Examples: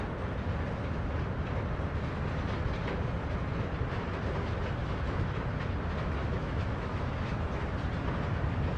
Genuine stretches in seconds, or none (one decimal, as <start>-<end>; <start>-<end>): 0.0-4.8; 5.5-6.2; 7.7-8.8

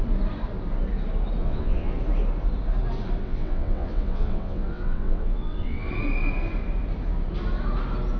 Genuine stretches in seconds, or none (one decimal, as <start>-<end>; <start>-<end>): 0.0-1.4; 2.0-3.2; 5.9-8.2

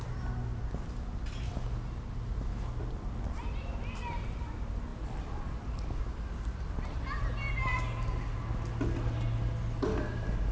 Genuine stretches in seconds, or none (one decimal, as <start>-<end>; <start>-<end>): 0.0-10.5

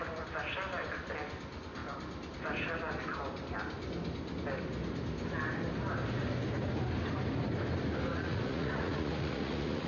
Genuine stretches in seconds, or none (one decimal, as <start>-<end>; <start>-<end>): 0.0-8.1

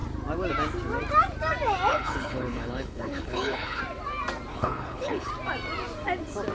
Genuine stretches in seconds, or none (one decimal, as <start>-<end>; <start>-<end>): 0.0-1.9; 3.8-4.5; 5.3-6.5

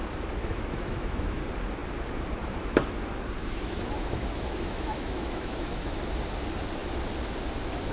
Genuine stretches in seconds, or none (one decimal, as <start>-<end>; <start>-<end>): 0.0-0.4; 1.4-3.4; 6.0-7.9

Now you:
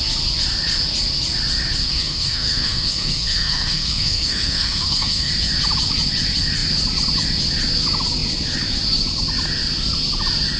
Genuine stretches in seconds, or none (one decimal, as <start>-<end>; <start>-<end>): 0.0-1.8; 5.3-10.6

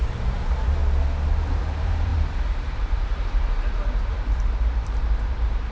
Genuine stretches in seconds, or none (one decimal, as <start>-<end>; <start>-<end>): 0.8-1.4